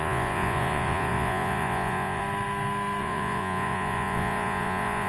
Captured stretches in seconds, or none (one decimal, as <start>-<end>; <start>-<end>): 2.2-3.0